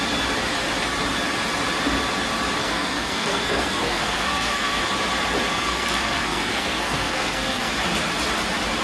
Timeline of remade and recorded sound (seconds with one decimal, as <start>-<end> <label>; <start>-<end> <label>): 0.0-2.6 recorded; 2.6-4.8 remade; 4.8-5.5 recorded; 5.5-7.7 remade; 7.7-8.8 recorded